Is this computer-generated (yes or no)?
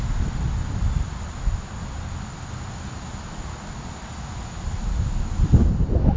no